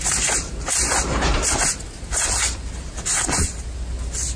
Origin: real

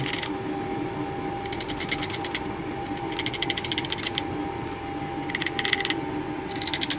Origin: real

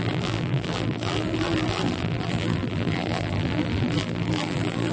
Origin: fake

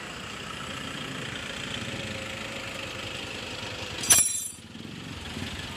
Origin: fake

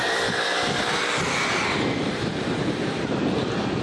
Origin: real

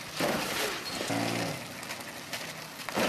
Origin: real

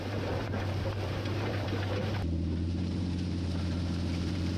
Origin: fake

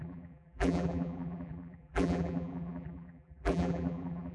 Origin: fake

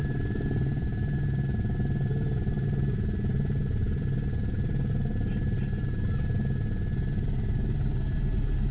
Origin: fake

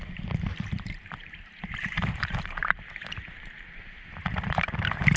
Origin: fake